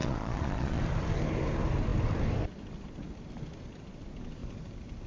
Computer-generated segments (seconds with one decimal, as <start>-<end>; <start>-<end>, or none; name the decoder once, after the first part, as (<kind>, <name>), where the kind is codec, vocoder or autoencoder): 0.0-0.8 (vocoder, Vocos)

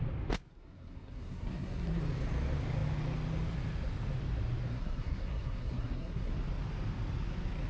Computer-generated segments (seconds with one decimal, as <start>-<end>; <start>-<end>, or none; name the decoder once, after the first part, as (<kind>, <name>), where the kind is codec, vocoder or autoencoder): 0.5-2.0 (codec, SNAC); 4.7-6.3

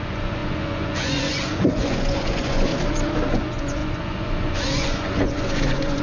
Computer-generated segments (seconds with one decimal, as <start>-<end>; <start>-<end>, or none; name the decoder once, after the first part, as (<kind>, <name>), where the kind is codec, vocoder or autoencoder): 0.0-2.7 (vocoder, Vocos); 3.3-6.0

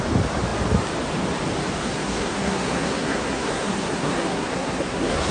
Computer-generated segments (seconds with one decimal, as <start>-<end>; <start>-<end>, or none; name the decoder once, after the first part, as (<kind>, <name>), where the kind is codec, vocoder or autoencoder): 1.8-5.3 (codec, SNAC)

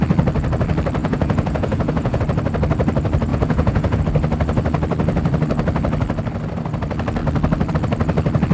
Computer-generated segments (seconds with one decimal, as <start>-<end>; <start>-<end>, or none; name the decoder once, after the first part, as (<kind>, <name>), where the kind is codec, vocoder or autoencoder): 1.0-2.2 (vocoder, Vocos); 3.3-4.0

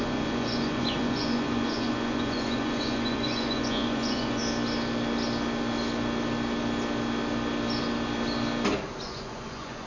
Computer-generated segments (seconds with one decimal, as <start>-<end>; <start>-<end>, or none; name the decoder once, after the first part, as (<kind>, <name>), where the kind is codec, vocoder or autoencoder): 0.0-4.4 (vocoder, Vocos); 9.0-9.9

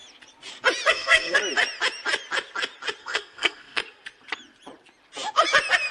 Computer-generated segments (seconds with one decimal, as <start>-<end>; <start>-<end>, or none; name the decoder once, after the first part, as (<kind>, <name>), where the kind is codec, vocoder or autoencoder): 0.9-1.4 (codec, SNAC); 3.0-3.8